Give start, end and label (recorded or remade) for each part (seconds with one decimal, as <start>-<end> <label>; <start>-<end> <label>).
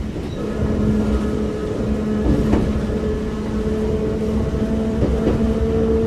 0.0-6.1 recorded